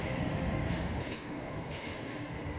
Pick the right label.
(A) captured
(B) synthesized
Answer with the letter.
B